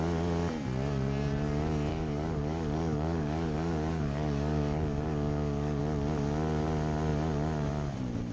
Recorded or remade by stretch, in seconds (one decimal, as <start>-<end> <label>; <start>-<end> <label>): 0.0-1.9 recorded; 1.9-5.8 remade; 5.8-8.3 recorded